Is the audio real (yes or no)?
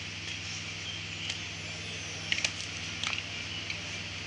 yes